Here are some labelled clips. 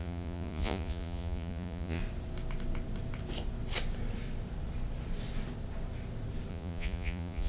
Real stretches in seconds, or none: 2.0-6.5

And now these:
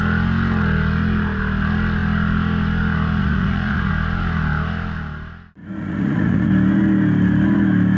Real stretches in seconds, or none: 0.0-3.2; 3.9-5.6; 6.5-8.0

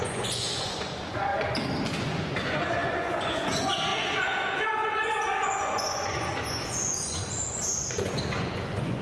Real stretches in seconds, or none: 1.3-2.0

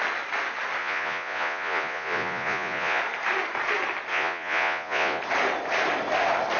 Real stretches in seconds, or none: 0.0-0.8; 3.0-4.1; 5.2-6.6